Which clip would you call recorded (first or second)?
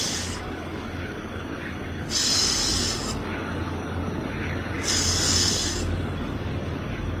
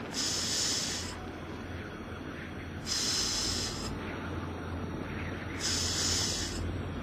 second